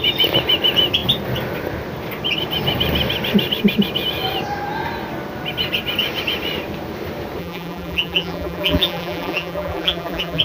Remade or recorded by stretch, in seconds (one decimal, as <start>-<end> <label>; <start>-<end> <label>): 0.0-7.4 recorded; 7.4-10.4 remade